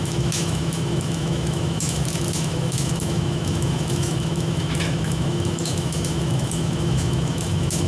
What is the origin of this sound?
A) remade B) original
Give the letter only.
A